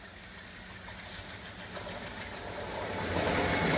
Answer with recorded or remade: recorded